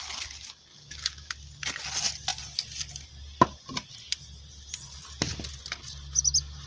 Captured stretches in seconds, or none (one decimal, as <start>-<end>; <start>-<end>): 0.0-0.7; 1.3-6.7